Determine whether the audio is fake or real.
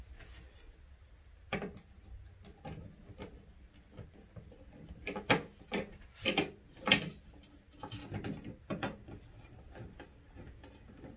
real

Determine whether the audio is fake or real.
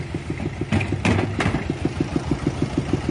real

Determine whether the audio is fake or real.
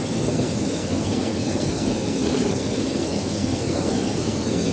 fake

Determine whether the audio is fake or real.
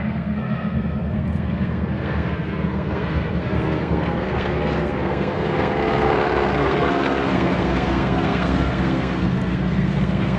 fake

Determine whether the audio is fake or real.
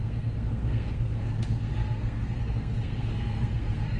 fake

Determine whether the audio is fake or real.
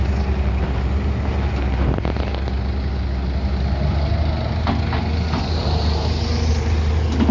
real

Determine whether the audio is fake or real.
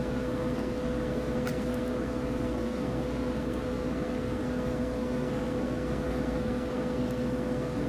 fake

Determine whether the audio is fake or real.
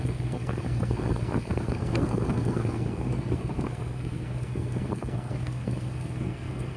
fake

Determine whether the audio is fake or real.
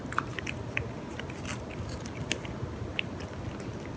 real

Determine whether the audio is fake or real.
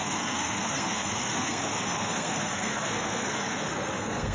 fake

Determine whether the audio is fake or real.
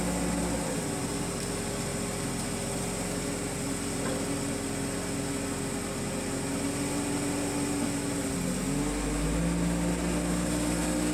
real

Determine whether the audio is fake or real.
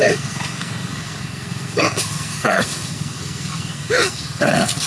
fake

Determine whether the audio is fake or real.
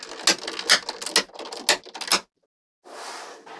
real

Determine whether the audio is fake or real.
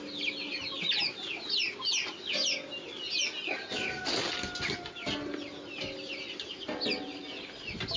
real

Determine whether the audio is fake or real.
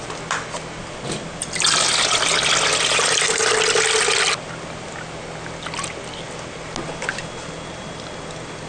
real